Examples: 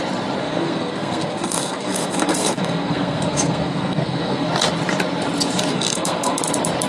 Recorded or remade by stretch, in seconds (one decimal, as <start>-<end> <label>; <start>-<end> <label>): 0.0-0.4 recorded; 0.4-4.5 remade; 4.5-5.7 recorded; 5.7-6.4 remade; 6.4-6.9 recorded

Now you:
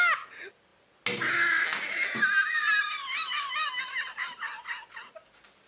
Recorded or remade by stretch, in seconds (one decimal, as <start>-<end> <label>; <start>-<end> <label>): 0.0-5.7 recorded

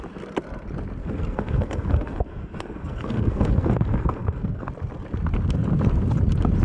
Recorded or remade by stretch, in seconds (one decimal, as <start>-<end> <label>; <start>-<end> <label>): 0.0-1.0 recorded; 1.0-4.7 remade; 4.7-6.6 recorded